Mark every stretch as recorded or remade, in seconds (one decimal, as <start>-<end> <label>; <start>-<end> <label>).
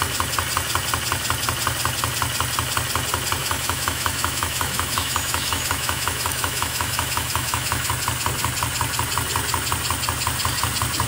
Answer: 0.0-3.4 recorded; 3.4-7.9 remade; 7.9-11.1 recorded